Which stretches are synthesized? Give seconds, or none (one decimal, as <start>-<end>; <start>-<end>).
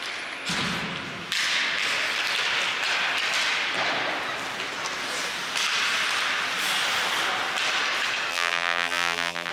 8.3-9.5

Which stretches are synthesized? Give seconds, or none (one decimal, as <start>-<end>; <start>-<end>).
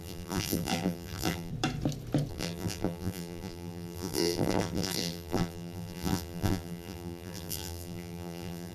0.0-1.5; 2.3-8.7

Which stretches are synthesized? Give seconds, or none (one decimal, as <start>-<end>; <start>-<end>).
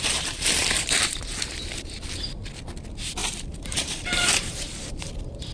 0.6-1.2; 3.2-4.9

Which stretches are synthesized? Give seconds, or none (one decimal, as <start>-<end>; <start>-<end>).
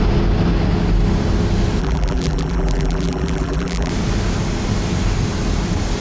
1.8-3.9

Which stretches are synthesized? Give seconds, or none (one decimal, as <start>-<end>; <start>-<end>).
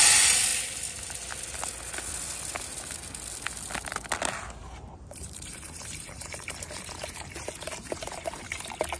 4.6-8.6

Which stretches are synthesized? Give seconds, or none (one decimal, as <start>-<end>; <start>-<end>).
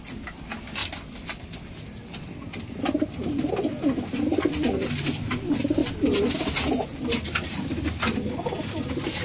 0.8-3.5; 5.8-8.7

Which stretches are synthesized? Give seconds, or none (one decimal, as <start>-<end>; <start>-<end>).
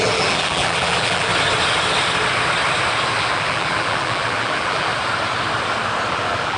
0.0-1.3; 3.2-4.9; 6.1-6.6